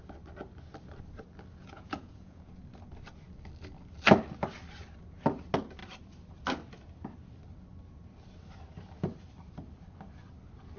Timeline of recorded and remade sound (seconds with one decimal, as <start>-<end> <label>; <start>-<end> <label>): 0.0-1.6 recorded; 1.6-2.5 remade; 2.5-10.8 recorded